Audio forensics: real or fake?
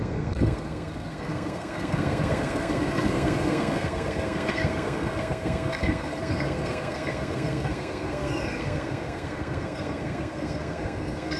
fake